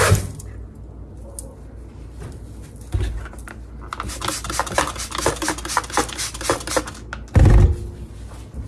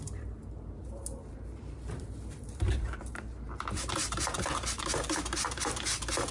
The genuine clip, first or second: first